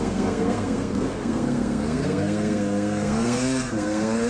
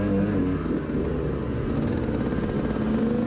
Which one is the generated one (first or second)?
first